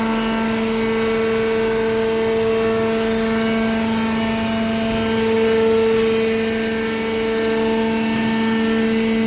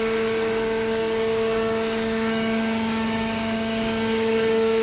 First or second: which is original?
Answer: first